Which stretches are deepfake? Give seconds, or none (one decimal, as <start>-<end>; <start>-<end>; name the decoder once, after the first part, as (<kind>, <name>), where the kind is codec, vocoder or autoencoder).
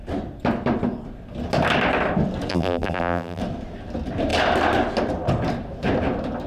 2.5-3.4 (vocoder, BigVGAN v2)